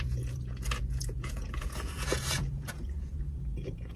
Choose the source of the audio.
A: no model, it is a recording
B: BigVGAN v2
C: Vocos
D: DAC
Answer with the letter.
C